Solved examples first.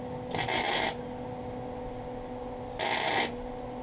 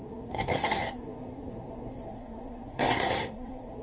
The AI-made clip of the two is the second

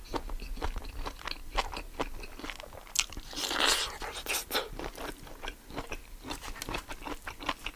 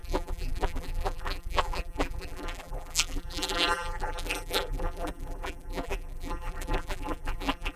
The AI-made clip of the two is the second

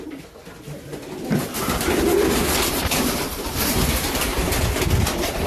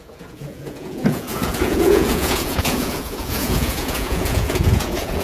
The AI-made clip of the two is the second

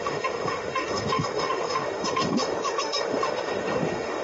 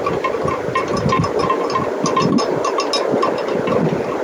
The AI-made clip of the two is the first